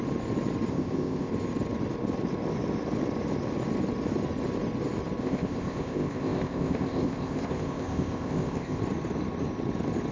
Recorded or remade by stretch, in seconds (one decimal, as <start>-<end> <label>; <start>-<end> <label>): 0.0-0.7 recorded; 0.7-1.3 remade; 1.3-5.2 recorded; 5.2-8.8 remade; 8.8-10.1 recorded